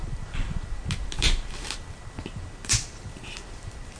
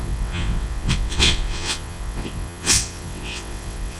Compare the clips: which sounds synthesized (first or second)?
second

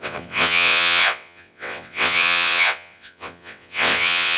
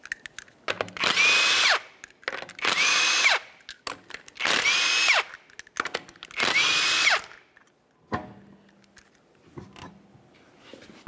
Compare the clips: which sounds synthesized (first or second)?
first